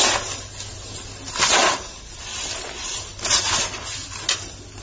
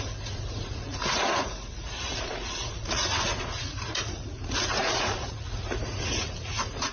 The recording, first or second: first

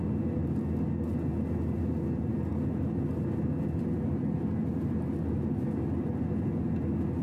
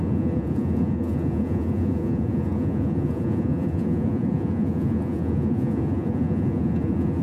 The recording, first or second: first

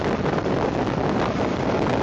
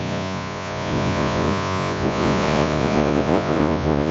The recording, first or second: first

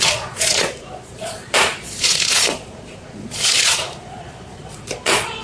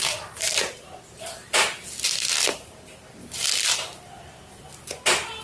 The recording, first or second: second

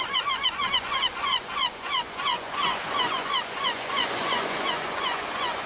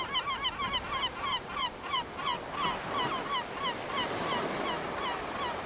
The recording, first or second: second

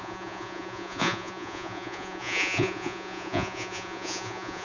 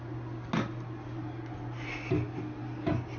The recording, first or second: second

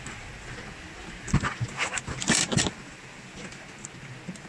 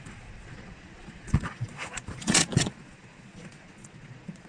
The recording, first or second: first